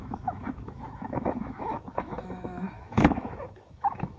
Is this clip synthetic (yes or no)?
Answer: yes